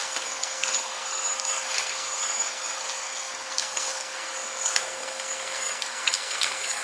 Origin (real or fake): fake